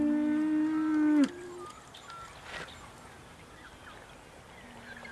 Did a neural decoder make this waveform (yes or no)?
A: no